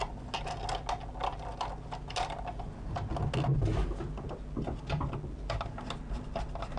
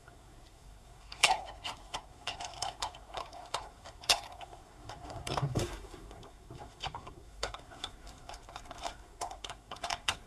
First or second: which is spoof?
second